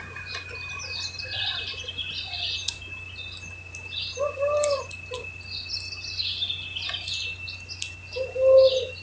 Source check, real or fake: real